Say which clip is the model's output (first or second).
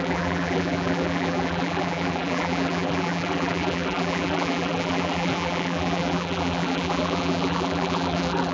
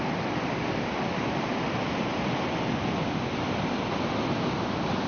first